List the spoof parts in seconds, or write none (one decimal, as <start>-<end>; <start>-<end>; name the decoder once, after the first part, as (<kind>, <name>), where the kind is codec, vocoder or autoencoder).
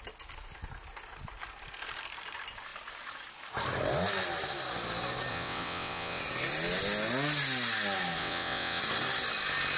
5.3-6.2 (vocoder, WaveNeXt); 8.2-8.8